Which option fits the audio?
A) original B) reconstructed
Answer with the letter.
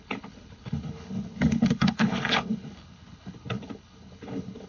B